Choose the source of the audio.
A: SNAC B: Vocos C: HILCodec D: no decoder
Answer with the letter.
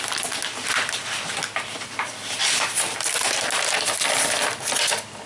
D